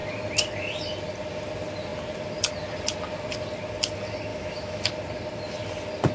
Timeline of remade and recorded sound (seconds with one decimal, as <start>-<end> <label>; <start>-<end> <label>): 0.0-4.3 recorded; 4.3-4.9 remade; 4.9-6.1 recorded